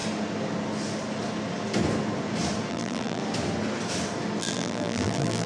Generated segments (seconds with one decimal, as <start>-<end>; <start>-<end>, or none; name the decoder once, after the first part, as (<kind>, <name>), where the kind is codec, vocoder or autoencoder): 2.7-3.2 (vocoder, BigVGAN v2); 4.4-5.5